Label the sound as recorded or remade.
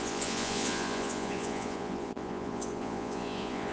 remade